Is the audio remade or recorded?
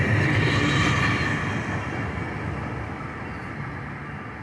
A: recorded